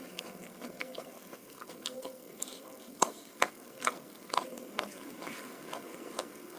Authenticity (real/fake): fake